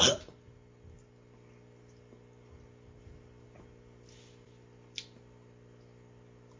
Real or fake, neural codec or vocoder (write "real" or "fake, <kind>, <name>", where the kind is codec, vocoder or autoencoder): real